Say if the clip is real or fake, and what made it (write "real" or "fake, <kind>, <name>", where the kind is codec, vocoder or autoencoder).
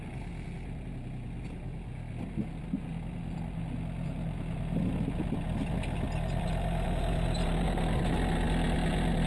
real